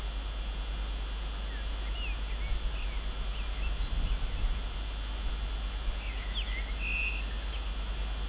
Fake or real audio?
real